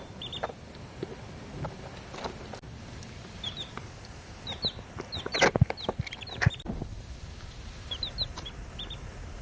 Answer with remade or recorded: recorded